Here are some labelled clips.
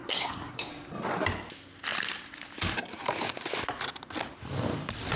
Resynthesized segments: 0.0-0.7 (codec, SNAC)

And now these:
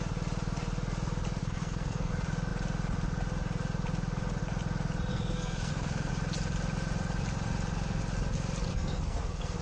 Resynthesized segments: 1.4-2.1 (codec, SNAC); 5.1-6.1; 8.7-9.6

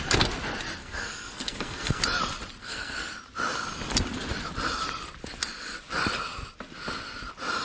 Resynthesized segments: 0.8-2.0 (codec, SNAC); 2.6-3.1

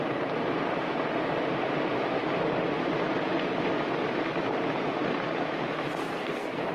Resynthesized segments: 6.0-6.7 (codec, SNAC)

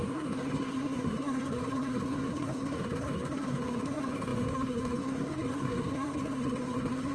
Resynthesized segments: 0.0-7.1 (codec, SNAC)